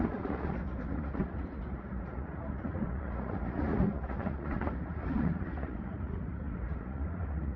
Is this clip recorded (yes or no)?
no